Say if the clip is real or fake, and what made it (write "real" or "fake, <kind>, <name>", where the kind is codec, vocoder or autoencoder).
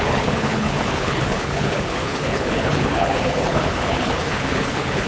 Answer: fake, codec, HILCodec